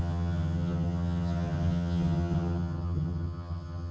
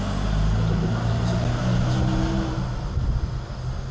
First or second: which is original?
second